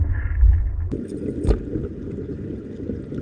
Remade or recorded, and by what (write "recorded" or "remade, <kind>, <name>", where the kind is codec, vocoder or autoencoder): recorded